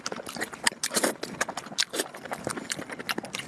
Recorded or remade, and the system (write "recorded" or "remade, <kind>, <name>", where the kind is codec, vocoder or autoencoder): recorded